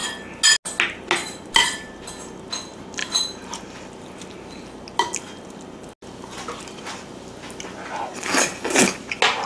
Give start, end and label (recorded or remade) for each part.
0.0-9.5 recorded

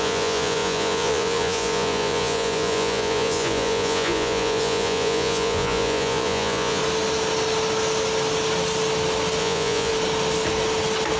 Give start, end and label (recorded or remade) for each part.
0.0-6.8 remade; 6.8-9.4 recorded; 9.4-9.9 remade; 9.9-11.2 recorded

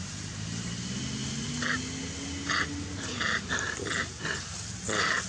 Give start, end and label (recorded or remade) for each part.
0.0-5.3 recorded

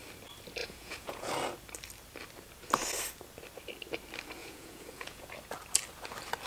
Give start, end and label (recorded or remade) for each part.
0.0-0.6 recorded; 0.6-1.3 remade; 1.3-4.4 recorded; 4.4-5.3 remade; 5.3-6.5 recorded

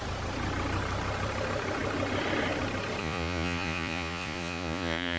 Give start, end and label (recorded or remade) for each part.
0.0-3.0 recorded; 3.0-5.2 remade